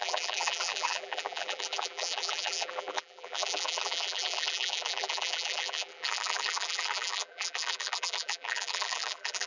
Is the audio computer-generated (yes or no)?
yes